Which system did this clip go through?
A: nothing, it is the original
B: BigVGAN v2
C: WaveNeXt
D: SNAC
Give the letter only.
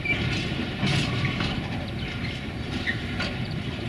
B